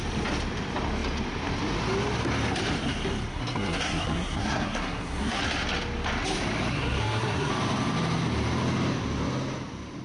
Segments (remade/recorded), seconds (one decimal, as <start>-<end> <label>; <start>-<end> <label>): 0.0-3.3 recorded; 3.3-5.4 remade; 5.4-6.7 recorded; 6.7-7.5 remade; 7.5-10.0 recorded

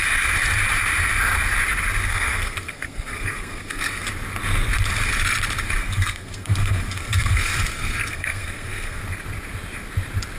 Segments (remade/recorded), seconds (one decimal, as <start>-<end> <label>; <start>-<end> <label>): 0.0-2.1 recorded; 2.1-4.1 remade; 4.1-5.8 recorded; 5.8-9.0 remade; 9.0-10.4 recorded

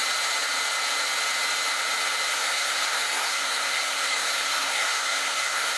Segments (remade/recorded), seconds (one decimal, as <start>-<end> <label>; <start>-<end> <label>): 0.0-2.3 recorded; 2.3-5.8 remade

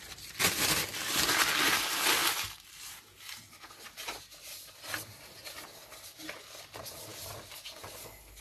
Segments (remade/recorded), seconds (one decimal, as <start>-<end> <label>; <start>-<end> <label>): 0.0-8.4 recorded